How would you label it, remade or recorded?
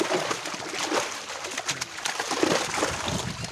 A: recorded